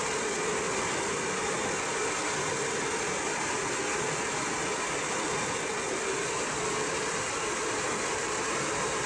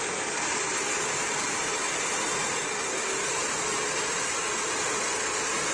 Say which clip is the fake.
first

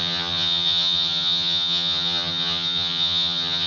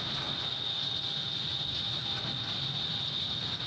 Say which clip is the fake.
first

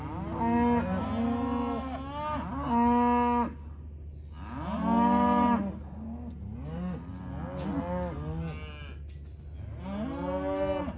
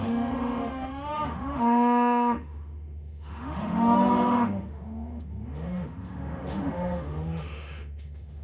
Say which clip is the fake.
second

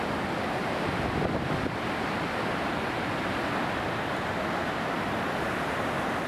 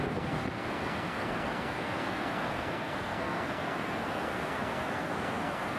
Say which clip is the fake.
second